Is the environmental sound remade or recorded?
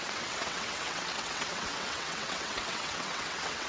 remade